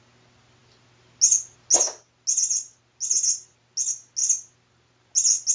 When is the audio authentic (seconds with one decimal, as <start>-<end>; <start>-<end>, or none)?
0.0-5.5